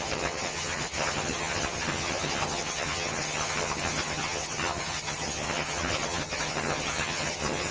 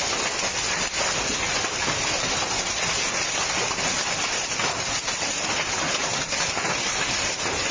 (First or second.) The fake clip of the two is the first